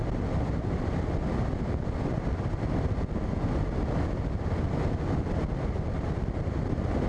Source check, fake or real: real